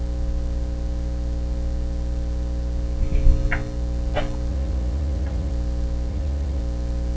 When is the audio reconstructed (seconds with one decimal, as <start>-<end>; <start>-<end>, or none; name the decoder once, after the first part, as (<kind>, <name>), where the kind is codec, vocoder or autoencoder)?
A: 4.5-5.5 (vocoder, Vocos); 6.1-6.6